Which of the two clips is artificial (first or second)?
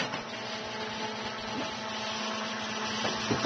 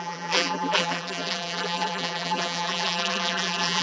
second